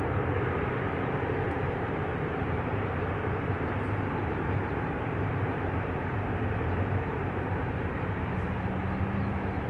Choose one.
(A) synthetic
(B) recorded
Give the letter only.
A